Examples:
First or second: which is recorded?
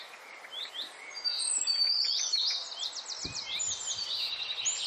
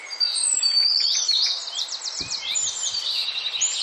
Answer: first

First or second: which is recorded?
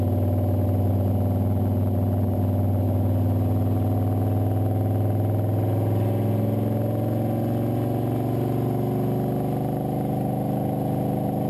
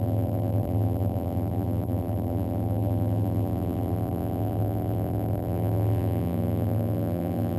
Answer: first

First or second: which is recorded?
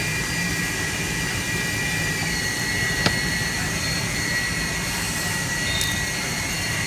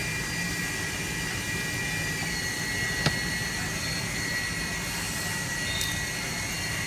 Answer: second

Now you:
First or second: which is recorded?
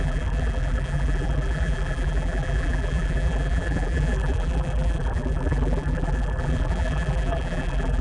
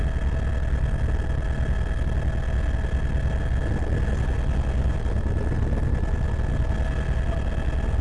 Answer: second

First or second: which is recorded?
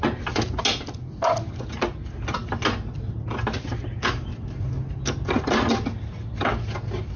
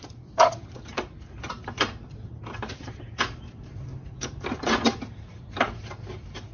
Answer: first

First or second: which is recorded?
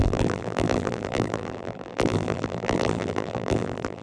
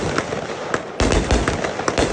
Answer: second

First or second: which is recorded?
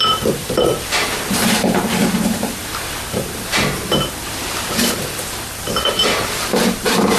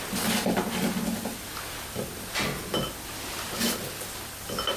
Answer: second